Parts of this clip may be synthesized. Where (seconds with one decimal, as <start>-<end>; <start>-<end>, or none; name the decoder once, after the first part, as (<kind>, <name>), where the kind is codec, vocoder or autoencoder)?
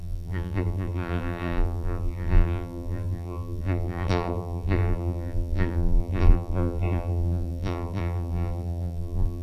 0.0-9.4 (vocoder, BigVGAN v2)